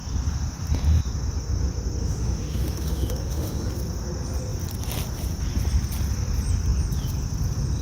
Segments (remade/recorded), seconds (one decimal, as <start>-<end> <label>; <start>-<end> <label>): 0.0-2.0 recorded; 2.0-3.7 remade; 3.7-7.8 recorded